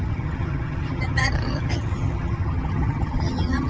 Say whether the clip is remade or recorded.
remade